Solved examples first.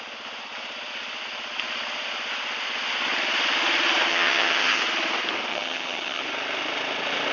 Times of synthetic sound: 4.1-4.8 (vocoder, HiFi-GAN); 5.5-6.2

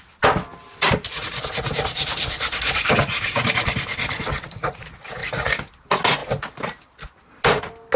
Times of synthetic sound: 5.2-5.7 (codec, DAC)

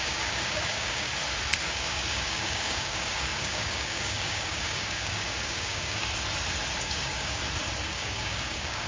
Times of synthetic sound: 0.0-1.1 (codec, DAC); 1.7-6.0; 6.8-7.4; 7.9-8.9

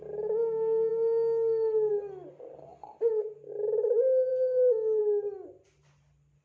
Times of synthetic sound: none